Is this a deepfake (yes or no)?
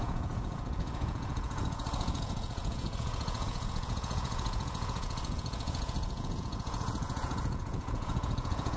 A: yes